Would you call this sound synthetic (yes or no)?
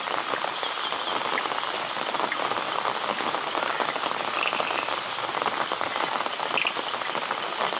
no